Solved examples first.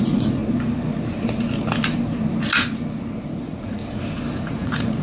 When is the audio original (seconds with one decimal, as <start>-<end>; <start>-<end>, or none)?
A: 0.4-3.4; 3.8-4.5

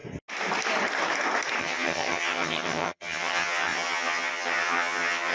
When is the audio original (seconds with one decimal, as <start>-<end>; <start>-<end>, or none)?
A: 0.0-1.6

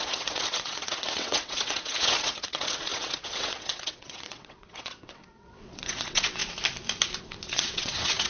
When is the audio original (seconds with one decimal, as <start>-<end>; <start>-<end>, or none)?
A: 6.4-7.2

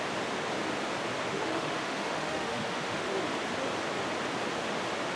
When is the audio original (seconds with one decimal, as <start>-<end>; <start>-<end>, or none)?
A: 0.0-1.3; 3.1-5.2